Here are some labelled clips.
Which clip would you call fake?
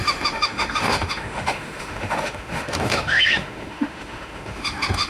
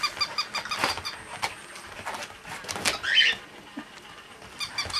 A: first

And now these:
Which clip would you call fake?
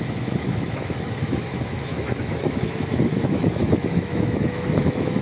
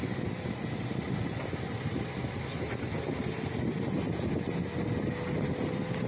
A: first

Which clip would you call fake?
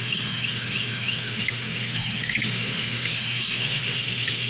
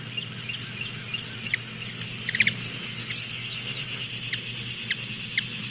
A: first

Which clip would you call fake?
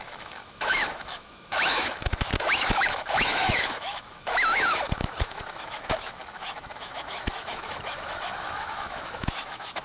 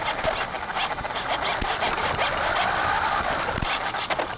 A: first